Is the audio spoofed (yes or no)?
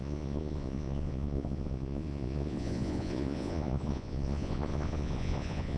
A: yes